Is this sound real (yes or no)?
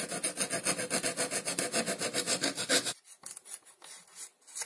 yes